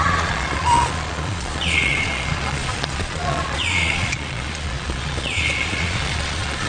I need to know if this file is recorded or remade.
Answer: remade